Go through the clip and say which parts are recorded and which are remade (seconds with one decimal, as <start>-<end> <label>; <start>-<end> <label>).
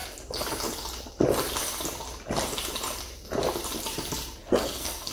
0.0-4.4 recorded; 4.4-5.1 remade